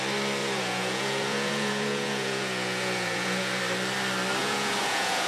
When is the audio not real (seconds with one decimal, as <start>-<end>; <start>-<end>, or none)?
0.4-3.6; 4.4-5.3